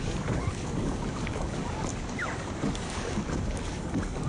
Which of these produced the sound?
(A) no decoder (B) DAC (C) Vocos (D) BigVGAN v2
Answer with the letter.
B